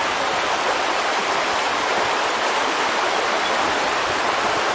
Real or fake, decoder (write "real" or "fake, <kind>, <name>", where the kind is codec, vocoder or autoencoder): real